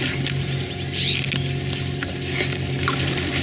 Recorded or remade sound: recorded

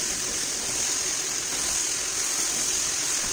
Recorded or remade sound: recorded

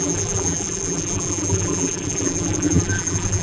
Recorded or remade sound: remade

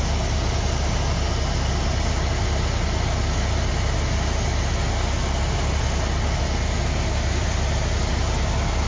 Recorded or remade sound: recorded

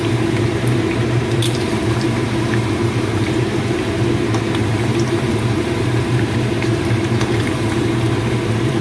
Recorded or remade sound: remade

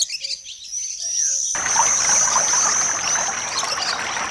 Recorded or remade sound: recorded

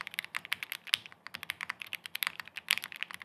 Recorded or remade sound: recorded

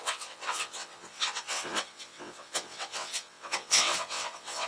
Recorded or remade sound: remade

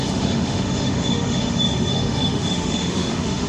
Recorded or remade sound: remade